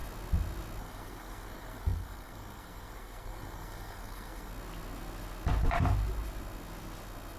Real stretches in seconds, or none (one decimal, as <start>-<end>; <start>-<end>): 0.0-0.8; 4.5-7.4